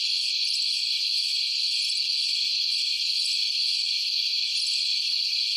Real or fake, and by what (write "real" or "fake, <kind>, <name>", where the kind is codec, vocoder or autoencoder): real